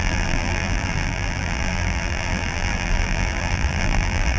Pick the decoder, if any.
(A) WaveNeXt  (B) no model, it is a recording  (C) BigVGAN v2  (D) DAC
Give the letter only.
C